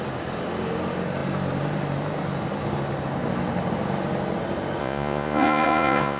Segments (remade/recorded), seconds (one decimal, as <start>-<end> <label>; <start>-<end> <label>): 0.0-4.8 recorded; 4.8-6.2 remade